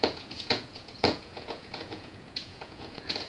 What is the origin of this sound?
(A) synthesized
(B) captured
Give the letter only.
A